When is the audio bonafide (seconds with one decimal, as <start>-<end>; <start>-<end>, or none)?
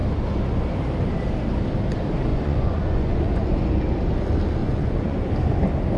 0.0-2.3; 3.6-4.6; 5.2-6.0